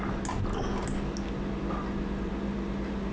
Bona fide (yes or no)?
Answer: yes